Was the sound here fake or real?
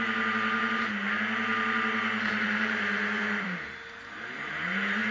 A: fake